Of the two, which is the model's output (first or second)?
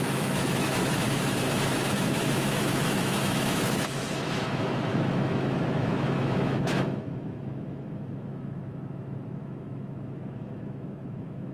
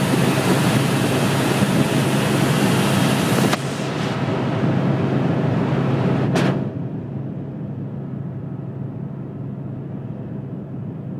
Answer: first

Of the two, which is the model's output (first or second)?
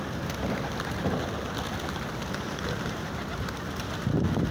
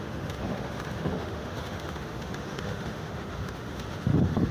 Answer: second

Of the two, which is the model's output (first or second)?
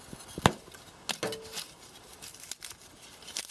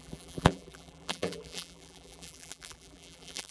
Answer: second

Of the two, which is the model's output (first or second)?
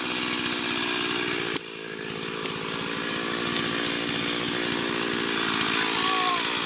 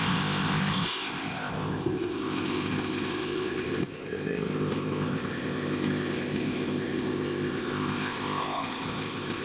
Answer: second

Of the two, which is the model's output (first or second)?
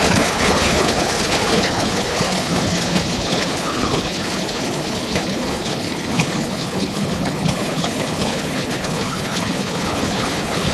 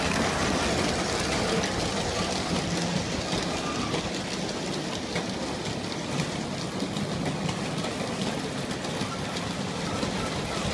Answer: first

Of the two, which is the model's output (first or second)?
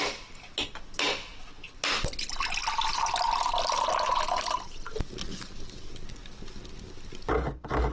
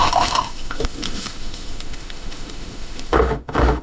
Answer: second